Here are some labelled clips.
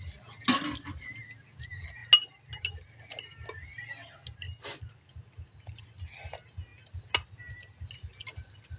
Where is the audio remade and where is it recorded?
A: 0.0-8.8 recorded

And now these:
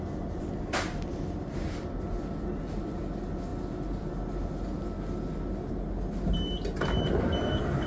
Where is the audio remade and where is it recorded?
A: 0.0-7.9 recorded

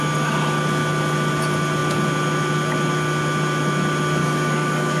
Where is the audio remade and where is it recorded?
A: 0.0-4.2 recorded; 4.2-5.0 remade

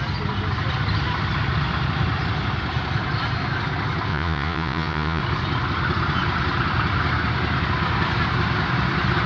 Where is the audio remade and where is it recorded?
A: 0.0-4.1 recorded; 4.1-5.2 remade; 5.2-9.3 recorded

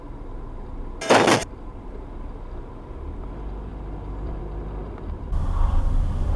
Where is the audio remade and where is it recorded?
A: 0.0-1.4 recorded; 1.4-2.0 remade; 2.0-6.4 recorded

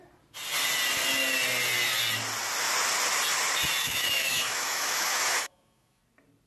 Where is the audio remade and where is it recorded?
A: 0.0-3.8 recorded; 3.8-6.0 remade; 6.0-6.5 recorded

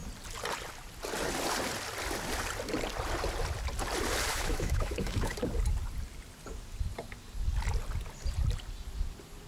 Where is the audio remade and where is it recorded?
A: 0.0-4.3 recorded; 4.3-5.3 remade; 5.3-9.5 recorded

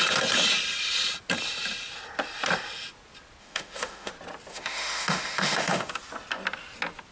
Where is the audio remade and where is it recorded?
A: 0.0-3.4 recorded; 3.4-4.1 remade; 4.1-4.5 recorded; 4.5-5.9 remade; 5.9-7.1 recorded